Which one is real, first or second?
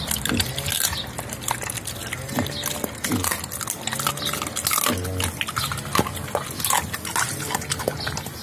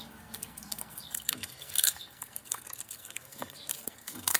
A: first